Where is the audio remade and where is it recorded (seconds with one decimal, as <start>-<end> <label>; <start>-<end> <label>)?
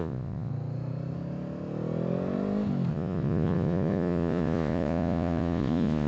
0.0-0.5 remade; 0.5-2.9 recorded; 2.9-6.1 remade